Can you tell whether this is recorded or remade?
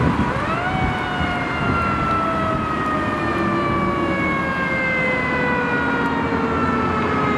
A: recorded